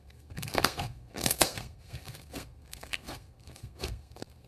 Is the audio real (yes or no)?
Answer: no